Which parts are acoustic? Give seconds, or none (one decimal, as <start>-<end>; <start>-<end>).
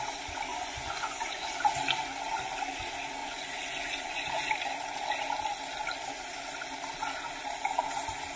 0.0-0.5; 1.5-3.2; 4.5-8.4